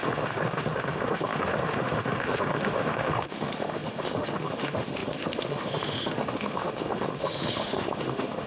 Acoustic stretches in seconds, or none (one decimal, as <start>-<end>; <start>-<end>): none